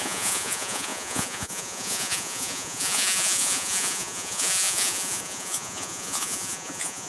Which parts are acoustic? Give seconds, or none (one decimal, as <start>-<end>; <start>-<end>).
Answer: none